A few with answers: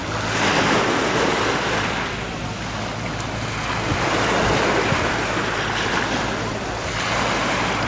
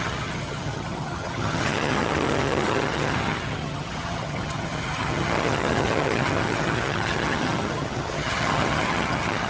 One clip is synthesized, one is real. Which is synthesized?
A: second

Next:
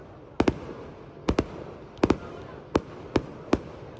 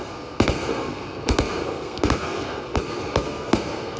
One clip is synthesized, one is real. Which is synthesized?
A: second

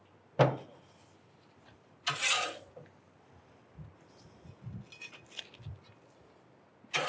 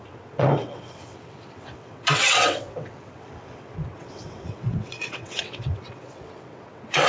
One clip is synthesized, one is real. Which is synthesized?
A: second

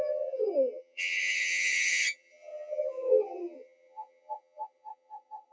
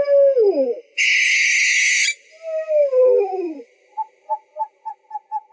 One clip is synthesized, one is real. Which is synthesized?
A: first